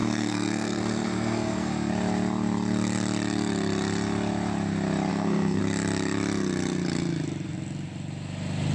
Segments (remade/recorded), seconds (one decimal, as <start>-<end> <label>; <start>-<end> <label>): 0.0-1.9 remade; 1.9-5.1 recorded; 5.1-5.6 remade; 5.6-8.7 recorded

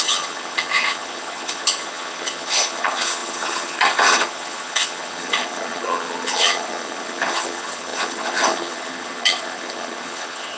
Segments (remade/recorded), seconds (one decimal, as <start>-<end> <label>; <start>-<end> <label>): 0.0-10.6 remade

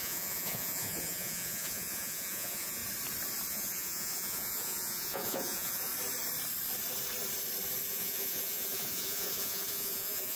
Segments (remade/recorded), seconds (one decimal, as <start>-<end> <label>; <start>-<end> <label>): 0.0-2.8 remade; 2.8-3.5 recorded; 3.5-5.9 remade; 5.9-7.9 recorded; 7.9-10.4 remade

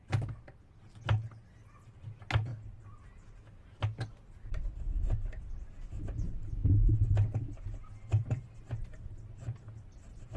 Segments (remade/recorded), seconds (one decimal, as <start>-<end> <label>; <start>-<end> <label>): 0.0-10.4 recorded

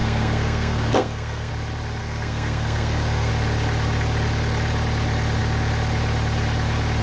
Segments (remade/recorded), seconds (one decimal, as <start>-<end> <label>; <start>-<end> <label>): 0.0-1.5 remade; 1.5-2.0 recorded; 2.0-3.3 remade; 3.3-7.0 recorded

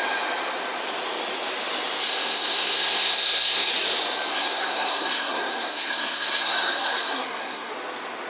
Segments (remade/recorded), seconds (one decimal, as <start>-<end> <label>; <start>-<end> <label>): 0.0-2.0 recorded; 2.0-3.7 remade; 3.7-4.3 recorded; 4.3-7.7 remade; 7.7-8.3 recorded

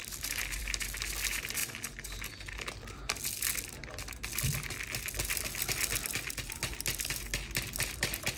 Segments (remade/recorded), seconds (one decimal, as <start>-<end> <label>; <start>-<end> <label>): 0.0-8.4 recorded

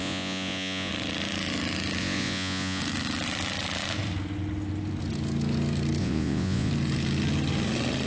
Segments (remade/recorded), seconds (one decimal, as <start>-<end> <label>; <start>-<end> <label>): 0.0-0.9 remade; 0.9-2.0 recorded; 2.0-2.8 remade; 2.8-6.0 recorded; 6.0-6.7 remade; 6.7-8.1 recorded